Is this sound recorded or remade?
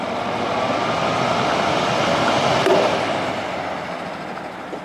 recorded